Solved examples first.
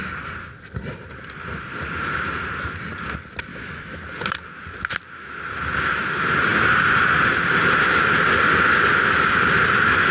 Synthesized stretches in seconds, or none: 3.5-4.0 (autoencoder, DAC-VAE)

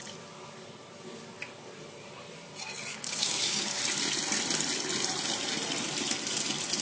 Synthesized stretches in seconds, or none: 2.9-3.8 (codec, DAC)

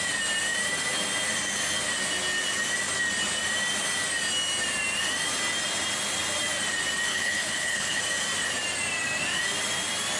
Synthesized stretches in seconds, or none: 7.1-8.0 (codec, HILCodec)

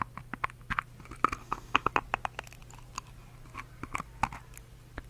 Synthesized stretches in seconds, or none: 1.4-1.9 (codec, DAC)

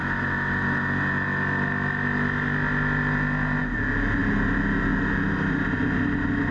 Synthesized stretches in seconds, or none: none

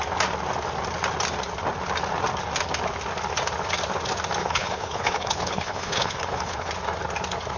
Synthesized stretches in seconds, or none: 4.4-6.7 (codec, HILCodec)

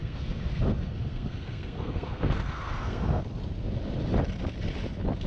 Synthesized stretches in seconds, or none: 0.0-3.2 (codec, SNAC)